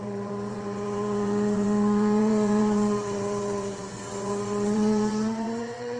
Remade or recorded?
remade